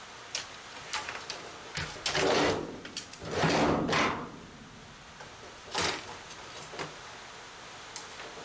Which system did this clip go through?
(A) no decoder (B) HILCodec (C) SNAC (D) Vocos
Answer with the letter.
A